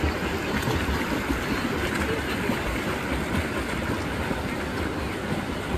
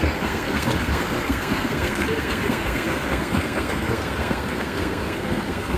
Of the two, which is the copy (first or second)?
second